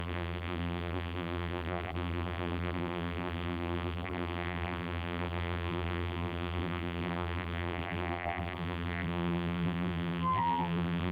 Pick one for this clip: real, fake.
fake